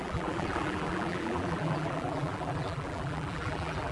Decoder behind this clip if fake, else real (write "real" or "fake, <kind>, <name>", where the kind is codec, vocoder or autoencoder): fake, vocoder, BigVGAN v2